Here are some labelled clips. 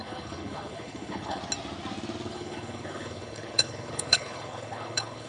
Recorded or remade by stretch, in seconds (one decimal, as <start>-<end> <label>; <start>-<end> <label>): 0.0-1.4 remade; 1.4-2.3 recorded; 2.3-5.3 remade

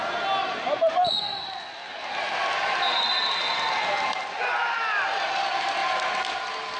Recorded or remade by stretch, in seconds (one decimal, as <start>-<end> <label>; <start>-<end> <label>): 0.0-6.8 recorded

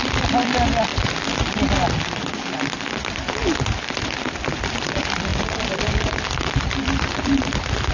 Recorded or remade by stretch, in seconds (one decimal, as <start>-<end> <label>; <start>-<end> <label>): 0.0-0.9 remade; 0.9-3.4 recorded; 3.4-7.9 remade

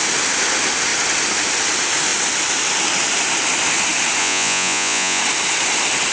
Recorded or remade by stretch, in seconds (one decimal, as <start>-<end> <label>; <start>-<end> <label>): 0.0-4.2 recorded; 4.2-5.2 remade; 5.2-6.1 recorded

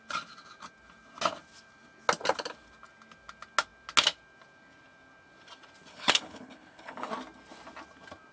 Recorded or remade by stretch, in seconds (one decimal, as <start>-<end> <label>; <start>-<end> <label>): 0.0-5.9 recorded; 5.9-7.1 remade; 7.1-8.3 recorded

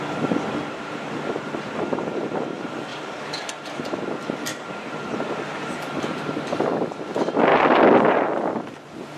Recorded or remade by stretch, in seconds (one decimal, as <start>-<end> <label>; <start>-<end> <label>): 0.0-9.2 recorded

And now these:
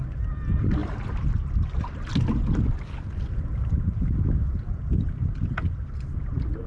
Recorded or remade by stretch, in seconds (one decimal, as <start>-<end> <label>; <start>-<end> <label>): 0.0-6.7 recorded